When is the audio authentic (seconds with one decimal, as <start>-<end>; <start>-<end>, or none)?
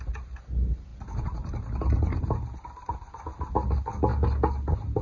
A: 0.0-5.0